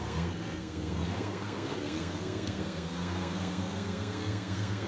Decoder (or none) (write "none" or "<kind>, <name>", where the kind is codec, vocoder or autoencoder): codec, SNAC